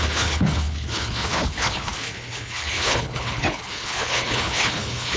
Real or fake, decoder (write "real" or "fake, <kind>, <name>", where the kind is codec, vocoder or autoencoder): fake, codec, HILCodec